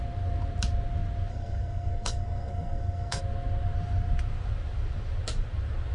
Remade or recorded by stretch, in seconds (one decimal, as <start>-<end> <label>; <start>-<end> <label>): 0.0-1.3 recorded; 1.3-3.2 remade; 3.2-5.9 recorded